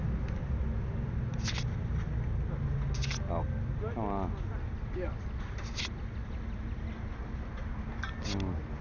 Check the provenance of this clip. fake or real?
real